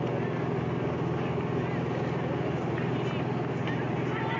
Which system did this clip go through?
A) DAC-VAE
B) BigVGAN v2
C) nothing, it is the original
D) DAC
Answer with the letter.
C